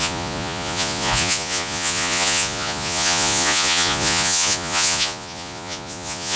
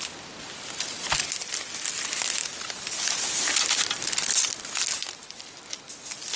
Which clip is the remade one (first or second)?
first